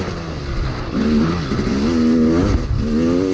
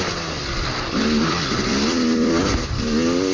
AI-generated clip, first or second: second